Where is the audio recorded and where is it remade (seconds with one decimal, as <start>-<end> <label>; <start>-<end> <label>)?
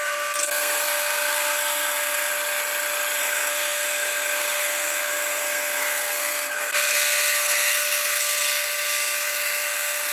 0.0-2.3 remade; 2.3-3.2 recorded; 3.2-10.1 remade